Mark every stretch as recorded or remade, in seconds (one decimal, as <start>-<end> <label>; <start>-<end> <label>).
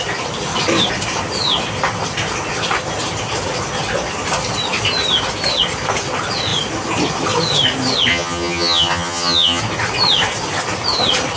0.0-8.1 recorded; 8.1-9.6 remade; 9.6-11.4 recorded